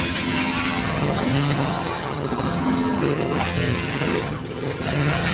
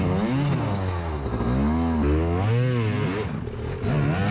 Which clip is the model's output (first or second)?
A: first